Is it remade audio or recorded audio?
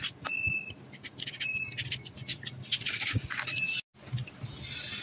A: recorded